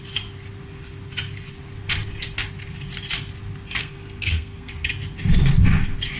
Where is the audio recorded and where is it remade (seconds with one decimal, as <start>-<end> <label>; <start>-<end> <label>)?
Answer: 0.0-3.8 recorded; 3.8-4.7 remade; 4.7-6.2 recorded